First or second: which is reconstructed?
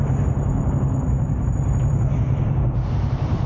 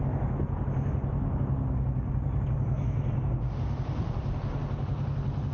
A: first